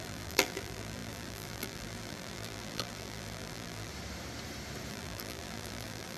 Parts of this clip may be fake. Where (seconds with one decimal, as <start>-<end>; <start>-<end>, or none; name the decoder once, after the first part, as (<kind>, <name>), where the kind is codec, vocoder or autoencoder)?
0.0-3.9 (vocoder, BigVGAN v2); 4.9-6.2